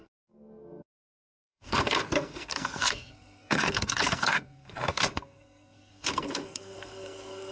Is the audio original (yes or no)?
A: no